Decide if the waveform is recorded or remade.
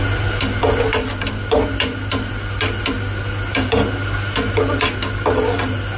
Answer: recorded